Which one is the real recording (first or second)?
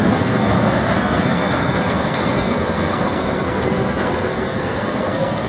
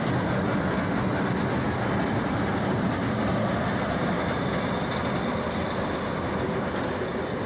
second